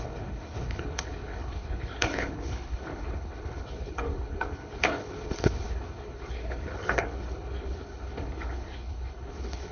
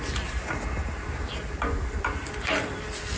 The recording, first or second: second